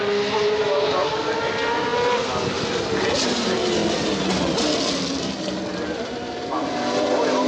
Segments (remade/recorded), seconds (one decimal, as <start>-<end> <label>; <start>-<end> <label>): 0.0-7.5 recorded